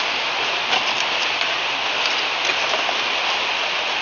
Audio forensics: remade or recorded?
recorded